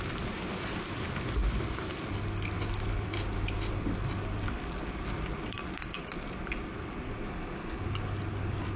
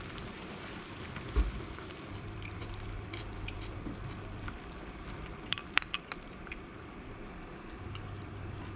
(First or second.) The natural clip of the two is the first